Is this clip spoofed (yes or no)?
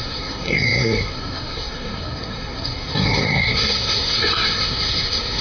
yes